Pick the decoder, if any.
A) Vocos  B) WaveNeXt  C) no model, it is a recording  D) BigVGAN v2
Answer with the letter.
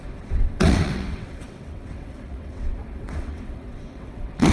B